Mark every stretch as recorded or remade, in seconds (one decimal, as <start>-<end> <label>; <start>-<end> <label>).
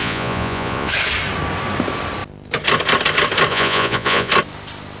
0.0-0.9 remade; 0.9-3.5 recorded; 3.5-4.3 remade; 4.3-5.0 recorded